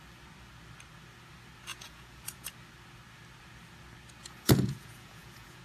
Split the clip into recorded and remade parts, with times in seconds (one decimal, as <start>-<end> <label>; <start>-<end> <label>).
0.0-1.7 recorded; 1.7-2.5 remade; 2.5-4.2 recorded; 4.2-5.6 remade